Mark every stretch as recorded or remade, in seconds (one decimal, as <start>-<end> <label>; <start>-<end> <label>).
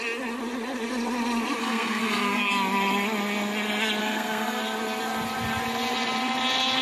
0.0-1.6 recorded; 1.6-2.5 remade; 2.5-4.0 recorded; 4.0-4.6 remade; 4.6-6.8 recorded